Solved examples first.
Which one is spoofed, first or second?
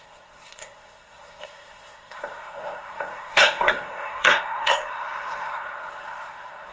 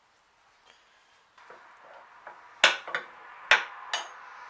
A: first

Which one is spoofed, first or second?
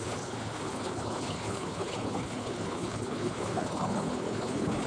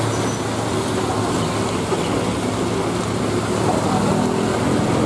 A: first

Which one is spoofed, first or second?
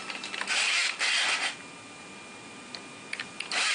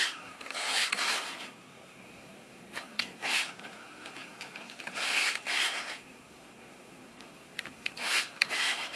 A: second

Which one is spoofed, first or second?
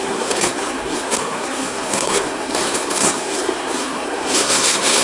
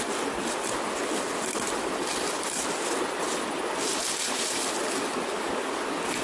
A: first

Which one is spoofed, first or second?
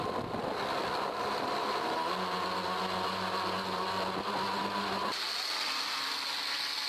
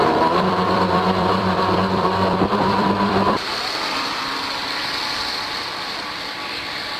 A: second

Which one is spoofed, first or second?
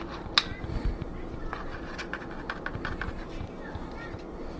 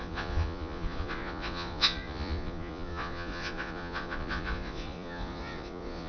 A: second